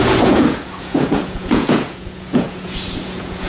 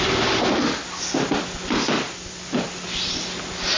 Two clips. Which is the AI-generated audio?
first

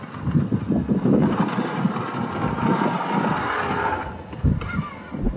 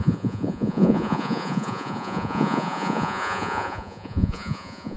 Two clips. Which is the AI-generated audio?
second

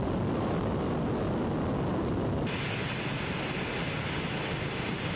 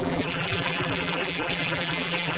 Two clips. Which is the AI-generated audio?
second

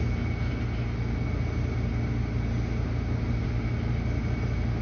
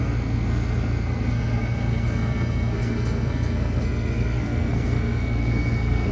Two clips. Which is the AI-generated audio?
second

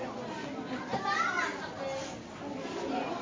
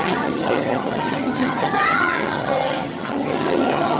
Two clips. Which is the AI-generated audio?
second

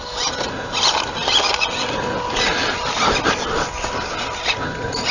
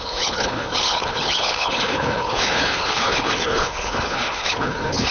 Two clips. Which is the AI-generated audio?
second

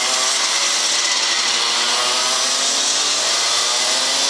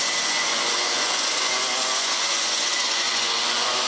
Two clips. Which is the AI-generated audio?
second